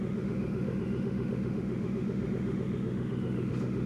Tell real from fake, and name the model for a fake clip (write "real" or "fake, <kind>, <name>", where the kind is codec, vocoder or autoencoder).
fake, autoencoder, DAC-VAE